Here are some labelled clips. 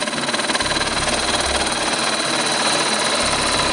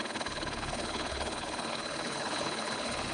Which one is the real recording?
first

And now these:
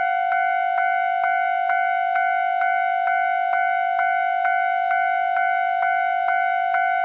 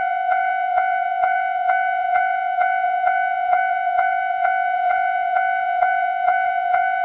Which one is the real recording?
first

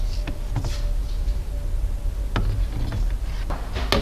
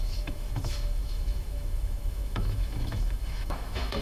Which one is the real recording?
first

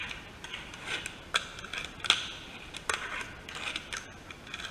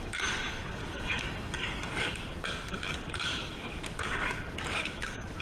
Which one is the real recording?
first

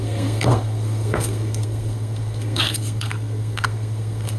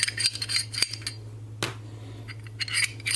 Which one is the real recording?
second